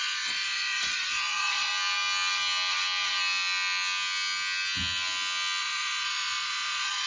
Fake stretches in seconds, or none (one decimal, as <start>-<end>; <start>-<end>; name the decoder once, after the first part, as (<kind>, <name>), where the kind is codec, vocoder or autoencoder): 0.0-1.7 (vocoder, Vocos); 5.6-7.1